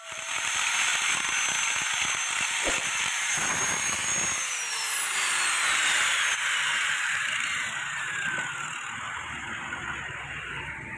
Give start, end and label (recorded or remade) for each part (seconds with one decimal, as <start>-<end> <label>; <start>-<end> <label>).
0.0-0.9 remade; 0.9-2.7 recorded; 2.7-4.0 remade; 4.0-4.7 recorded; 4.7-11.0 remade